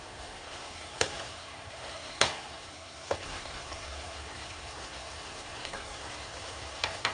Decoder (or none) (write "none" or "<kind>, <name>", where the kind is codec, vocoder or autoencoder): codec, SNAC